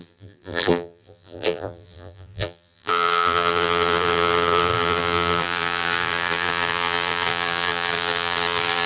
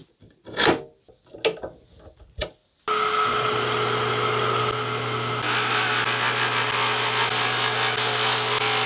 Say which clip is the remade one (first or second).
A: first